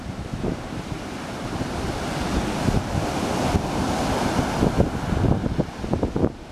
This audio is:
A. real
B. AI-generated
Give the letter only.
A